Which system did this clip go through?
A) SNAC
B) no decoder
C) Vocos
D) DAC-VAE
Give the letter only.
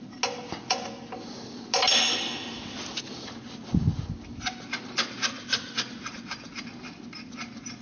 B